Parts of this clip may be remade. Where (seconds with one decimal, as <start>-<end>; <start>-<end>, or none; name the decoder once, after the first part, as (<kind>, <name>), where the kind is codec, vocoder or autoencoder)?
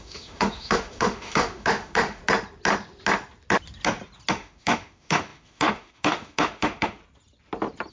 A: 0.0-2.2 (autoencoder, DAC-VAE); 4.3-7.0